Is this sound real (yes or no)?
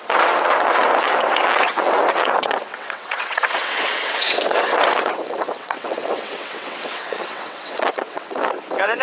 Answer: no